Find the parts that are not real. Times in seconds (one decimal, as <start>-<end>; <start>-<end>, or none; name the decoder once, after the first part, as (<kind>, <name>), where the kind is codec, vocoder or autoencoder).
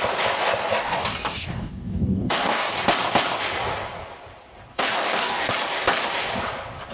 0.7-2.7 (codec, DAC); 4.7-5.5